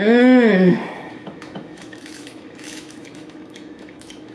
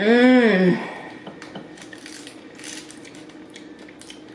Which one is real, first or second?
second